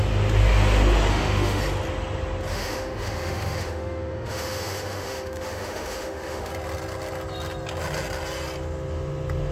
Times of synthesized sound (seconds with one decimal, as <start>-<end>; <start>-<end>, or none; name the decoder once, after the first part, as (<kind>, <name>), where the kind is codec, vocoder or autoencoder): 1.1-1.6 (autoencoder, DAC-VAE); 2.5-6.5